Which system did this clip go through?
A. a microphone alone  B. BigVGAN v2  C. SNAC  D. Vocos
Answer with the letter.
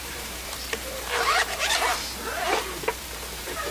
B